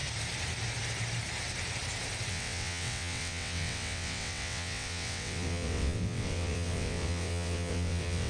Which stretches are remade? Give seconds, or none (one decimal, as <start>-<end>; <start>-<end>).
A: 2.3-8.3